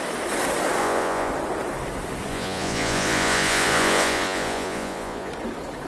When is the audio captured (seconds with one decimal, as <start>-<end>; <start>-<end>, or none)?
0.0-0.8; 1.3-2.3; 5.3-5.9